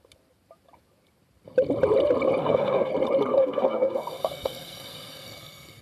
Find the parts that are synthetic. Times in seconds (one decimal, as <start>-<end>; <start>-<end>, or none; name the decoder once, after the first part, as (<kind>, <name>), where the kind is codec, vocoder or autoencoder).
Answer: 2.4-2.9 (codec, SNAC); 3.3-5.8